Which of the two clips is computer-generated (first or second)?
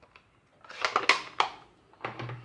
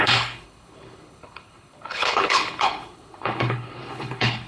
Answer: second